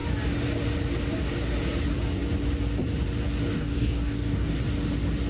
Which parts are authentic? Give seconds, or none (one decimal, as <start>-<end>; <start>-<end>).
0.0-3.5; 4.6-5.3